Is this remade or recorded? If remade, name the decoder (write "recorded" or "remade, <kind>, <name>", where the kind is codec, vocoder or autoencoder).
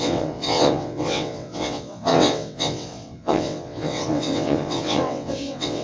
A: remade, vocoder, WaveNeXt